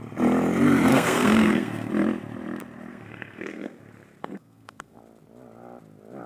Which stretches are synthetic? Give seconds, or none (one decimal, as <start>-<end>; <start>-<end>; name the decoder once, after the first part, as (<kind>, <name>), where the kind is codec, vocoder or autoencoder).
0.9-1.9 (codec, SNAC); 2.9-3.8; 4.2-5.0